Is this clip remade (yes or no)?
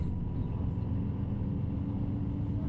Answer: no